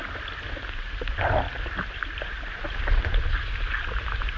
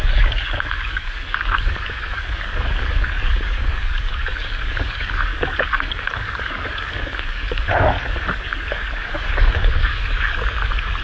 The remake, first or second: second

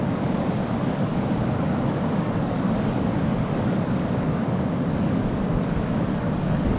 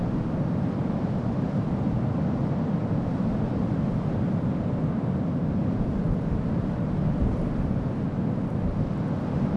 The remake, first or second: first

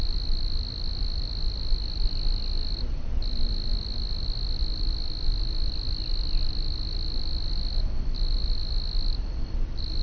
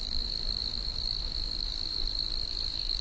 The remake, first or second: second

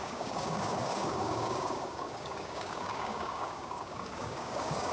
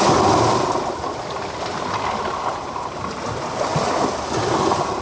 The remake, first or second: first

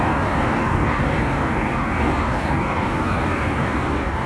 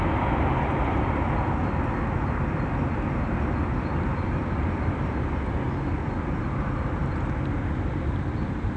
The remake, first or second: first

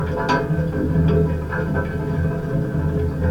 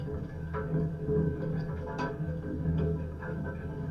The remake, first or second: second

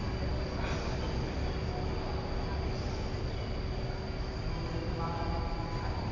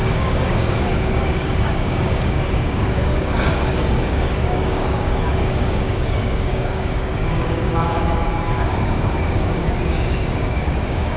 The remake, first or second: second